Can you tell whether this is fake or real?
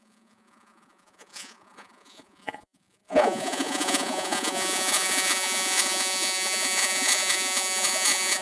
fake